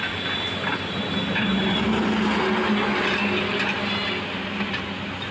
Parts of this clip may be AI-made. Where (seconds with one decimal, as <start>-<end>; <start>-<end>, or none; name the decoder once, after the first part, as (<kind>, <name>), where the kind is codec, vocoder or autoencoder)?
none